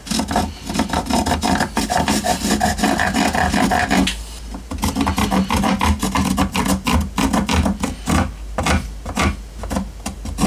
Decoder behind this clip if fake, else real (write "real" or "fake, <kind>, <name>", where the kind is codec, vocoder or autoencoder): real